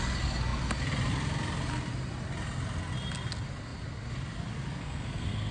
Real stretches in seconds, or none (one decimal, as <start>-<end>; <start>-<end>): 0.0-4.8